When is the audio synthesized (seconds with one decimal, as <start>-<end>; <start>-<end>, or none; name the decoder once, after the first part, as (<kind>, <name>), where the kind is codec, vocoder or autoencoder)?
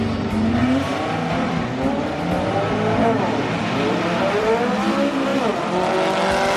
0.6-4.6 (vocoder, BigVGAN v2); 5.3-5.9